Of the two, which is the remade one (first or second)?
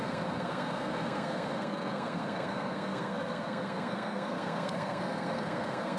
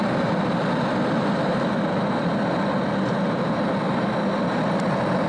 first